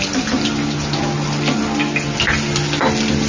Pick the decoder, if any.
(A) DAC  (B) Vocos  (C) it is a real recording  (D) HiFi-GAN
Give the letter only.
C